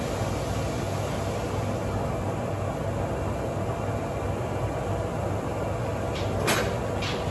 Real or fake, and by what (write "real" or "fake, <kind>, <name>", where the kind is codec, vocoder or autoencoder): real